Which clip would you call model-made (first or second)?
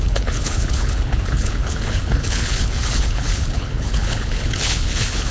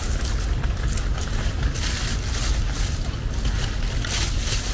first